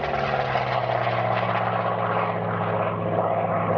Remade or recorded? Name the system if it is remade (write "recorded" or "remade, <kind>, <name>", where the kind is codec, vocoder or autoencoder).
recorded